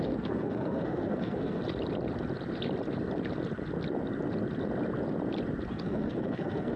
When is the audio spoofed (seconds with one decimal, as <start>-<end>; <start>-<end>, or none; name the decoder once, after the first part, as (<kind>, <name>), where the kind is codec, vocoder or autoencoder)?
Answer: 0.0-1.6 (codec, SNAC); 5.7-6.8